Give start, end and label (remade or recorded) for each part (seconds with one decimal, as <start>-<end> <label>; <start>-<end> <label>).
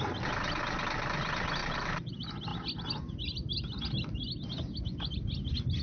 0.0-1.6 recorded; 1.6-2.1 remade; 2.1-5.8 recorded